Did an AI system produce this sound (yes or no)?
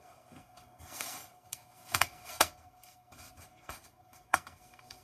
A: yes